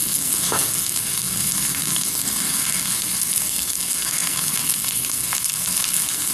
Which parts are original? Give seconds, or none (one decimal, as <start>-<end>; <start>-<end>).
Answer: none